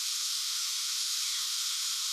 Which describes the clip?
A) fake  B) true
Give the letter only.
A